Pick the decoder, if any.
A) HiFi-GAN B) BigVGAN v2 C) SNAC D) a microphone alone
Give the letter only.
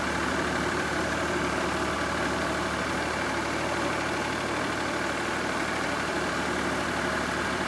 B